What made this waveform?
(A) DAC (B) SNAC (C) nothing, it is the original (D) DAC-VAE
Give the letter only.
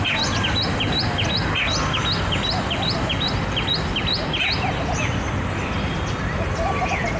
C